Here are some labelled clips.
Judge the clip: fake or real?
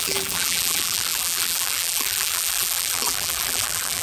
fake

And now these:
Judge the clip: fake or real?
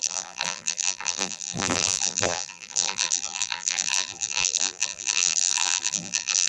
fake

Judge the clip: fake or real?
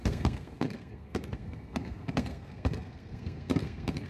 fake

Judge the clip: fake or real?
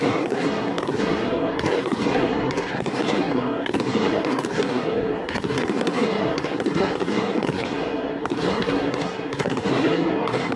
fake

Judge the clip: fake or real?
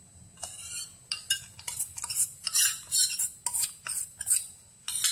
real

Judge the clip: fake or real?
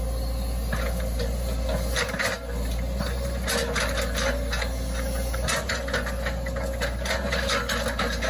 real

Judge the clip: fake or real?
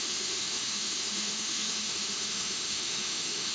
fake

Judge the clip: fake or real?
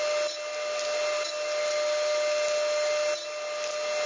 real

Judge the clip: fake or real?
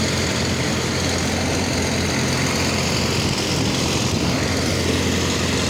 real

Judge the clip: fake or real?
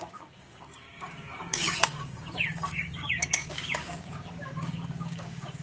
fake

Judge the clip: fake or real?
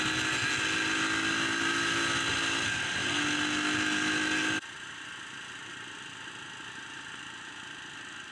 real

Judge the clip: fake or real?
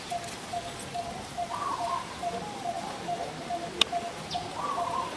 real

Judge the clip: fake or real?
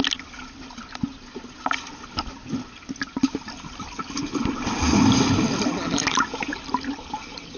real